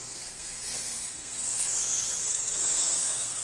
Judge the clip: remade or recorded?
remade